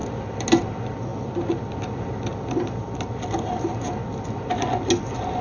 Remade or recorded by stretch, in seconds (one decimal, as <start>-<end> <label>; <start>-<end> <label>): 0.0-5.4 recorded